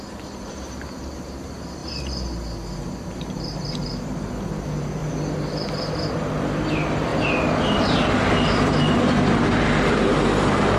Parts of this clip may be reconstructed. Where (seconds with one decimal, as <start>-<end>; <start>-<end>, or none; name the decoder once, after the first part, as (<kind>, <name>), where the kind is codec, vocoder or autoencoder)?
0.0-1.8 (vocoder, BigVGAN v2); 2.9-5.0; 6.1-10.8